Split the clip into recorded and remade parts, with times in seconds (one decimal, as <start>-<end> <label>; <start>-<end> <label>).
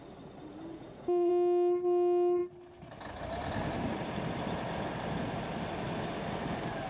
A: 0.0-0.7 recorded; 0.7-1.3 remade; 1.3-6.9 recorded